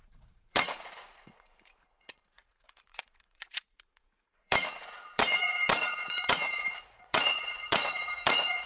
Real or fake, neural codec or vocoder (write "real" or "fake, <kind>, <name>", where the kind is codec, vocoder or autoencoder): fake, vocoder, Vocos